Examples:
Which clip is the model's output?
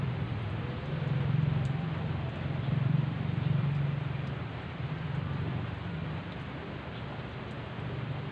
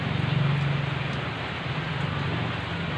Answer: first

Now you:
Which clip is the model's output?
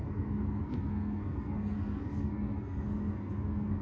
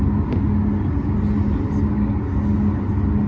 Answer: first